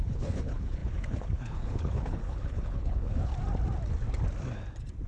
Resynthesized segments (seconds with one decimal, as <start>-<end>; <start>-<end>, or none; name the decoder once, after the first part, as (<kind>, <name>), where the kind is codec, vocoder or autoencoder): 0.0-3.3 (codec, HILCodec)